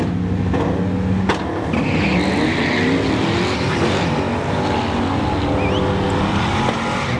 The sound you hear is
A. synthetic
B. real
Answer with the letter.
B